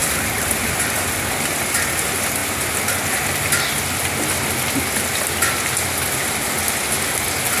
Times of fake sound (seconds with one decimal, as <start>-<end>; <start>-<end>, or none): 0.0-0.7

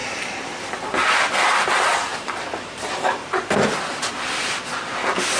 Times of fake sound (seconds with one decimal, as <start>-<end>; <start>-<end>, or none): 0.0-0.7; 2.1-4.1

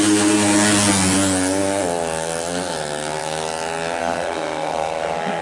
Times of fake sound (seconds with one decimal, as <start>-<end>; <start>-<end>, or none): 4.0-5.4

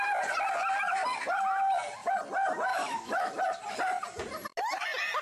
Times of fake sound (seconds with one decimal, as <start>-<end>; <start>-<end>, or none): 2.7-3.4